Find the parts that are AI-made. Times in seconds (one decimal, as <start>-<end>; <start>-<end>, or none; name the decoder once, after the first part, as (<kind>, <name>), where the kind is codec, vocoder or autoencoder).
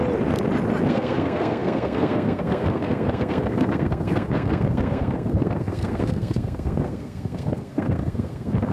0.9-8.7 (codec, SNAC)